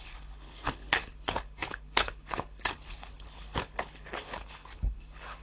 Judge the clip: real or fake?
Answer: fake